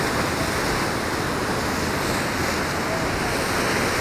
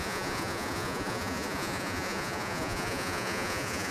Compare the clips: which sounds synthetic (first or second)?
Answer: second